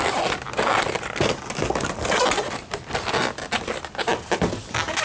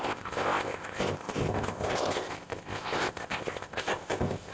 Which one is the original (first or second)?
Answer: first